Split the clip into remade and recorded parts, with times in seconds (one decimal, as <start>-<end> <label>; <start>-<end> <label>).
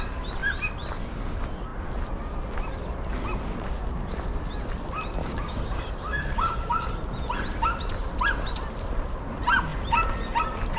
0.0-5.2 recorded; 5.2-6.9 remade; 6.9-10.8 recorded